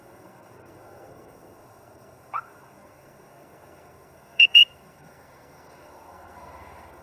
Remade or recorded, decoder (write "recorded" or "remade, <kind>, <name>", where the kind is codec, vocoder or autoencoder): remade, codec, SNAC